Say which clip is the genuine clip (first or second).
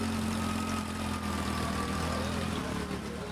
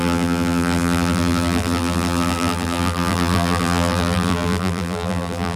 first